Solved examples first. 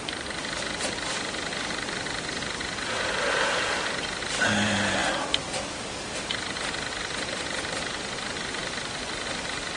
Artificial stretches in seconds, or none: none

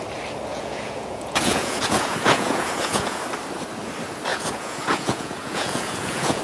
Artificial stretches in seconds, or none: 0.5-3.2; 4.3-6.4

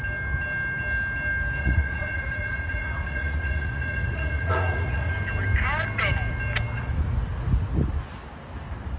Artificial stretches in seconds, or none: 1.6-5.1

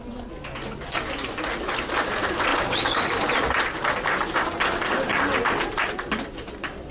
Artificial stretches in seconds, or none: 2.5-3.2

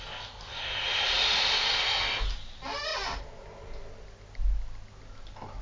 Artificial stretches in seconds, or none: 0.5-1.7

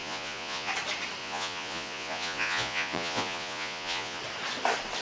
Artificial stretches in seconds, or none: 0.0-0.7; 1.2-4.2

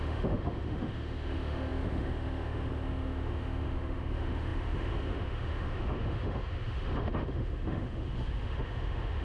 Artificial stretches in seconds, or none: 0.0-9.2